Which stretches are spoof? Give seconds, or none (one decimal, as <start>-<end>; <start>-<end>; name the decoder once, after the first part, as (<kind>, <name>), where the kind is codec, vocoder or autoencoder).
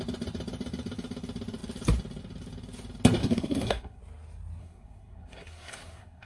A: 3.2-4.0 (codec, SNAC); 4.6-6.3